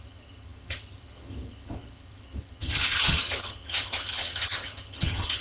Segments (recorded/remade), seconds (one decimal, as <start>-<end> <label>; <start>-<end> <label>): 0.0-5.4 remade